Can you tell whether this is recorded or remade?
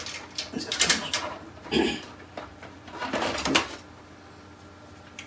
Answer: recorded